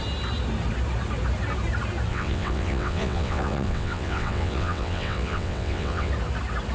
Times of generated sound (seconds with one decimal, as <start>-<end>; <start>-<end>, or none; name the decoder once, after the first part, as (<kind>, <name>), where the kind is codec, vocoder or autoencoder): 2.1-6.1 (vocoder, WaveNeXt)